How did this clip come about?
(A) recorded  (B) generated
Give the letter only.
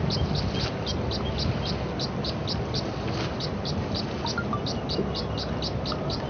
A